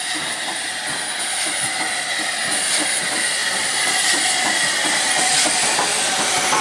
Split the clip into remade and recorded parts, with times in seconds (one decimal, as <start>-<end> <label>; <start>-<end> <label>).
0.0-3.4 recorded; 3.4-4.2 remade; 4.2-6.6 recorded